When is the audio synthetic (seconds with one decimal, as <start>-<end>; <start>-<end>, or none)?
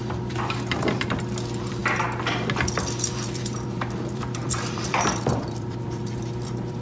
0.0-1.8; 3.1-6.8